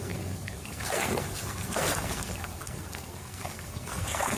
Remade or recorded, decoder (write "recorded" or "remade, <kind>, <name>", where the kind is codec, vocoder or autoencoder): remade, codec, SNAC